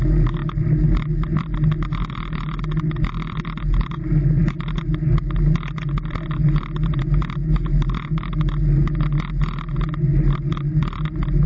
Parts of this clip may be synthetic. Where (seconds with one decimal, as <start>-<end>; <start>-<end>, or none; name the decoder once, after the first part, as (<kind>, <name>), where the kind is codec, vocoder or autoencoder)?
none